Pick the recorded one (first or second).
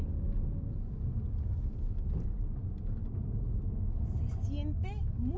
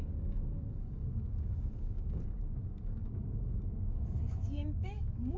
first